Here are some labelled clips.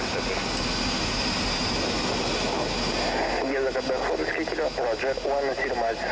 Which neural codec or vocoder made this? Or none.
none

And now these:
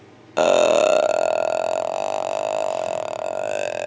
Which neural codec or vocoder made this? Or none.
none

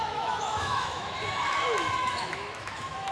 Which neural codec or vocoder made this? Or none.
autoencoder, DAC-VAE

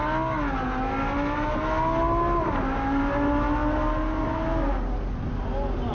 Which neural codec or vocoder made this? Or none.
none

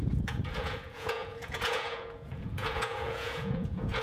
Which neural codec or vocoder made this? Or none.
vocoder, Vocos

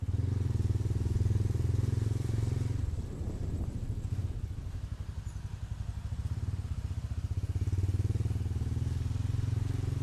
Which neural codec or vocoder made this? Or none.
none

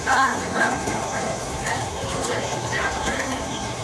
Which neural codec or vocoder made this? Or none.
codec, SNAC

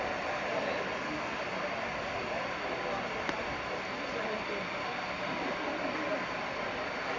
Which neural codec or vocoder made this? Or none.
none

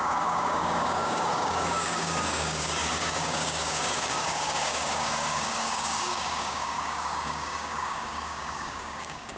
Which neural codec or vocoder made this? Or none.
codec, DAC